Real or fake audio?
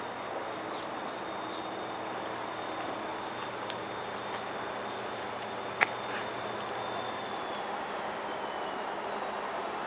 real